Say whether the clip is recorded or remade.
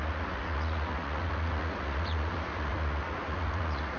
remade